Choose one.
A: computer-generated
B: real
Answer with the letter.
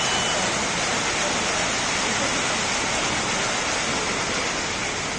B